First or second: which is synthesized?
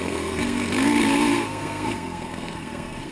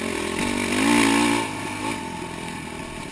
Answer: first